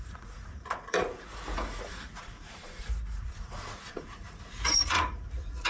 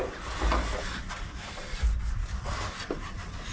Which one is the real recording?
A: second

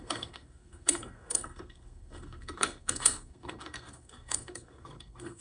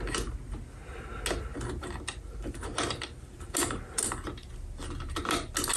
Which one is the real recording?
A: second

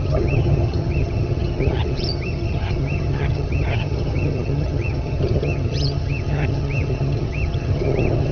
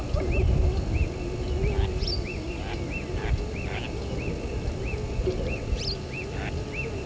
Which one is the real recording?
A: second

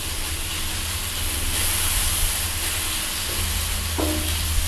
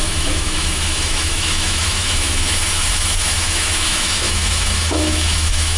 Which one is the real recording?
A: first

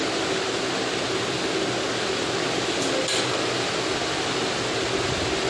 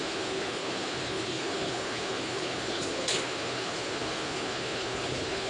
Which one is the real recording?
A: first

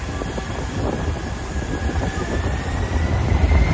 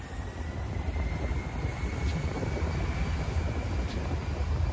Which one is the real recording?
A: second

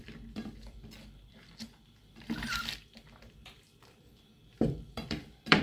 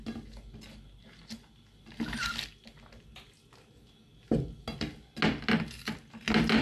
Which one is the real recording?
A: second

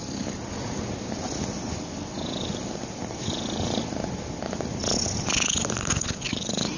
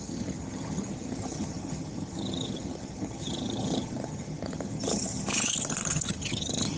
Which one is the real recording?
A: first